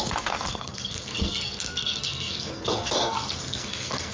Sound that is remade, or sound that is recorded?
remade